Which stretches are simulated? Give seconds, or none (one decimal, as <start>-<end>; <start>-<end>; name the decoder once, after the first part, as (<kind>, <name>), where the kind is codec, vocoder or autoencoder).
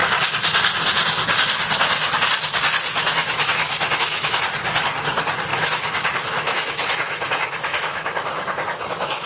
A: 3.0-4.4 (autoencoder, DAC-VAE); 5.5-9.3